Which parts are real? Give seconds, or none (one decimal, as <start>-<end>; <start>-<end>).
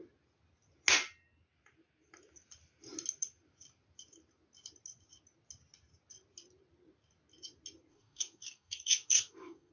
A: 0.0-7.9